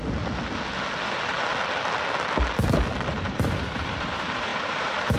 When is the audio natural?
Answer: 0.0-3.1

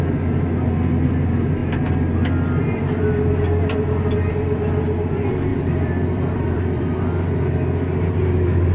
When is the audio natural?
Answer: 0.0-5.5; 7.0-8.7

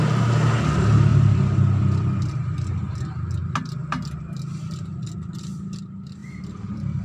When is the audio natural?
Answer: 0.0-1.1; 5.3-6.2

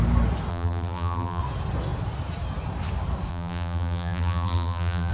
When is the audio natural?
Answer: 0.0-0.5; 1.4-3.3

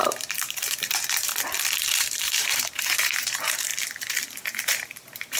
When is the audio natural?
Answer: 1.3-1.9; 3.7-4.4

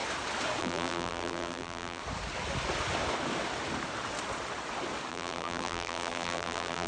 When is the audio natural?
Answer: 0.0-0.6; 2.0-5.1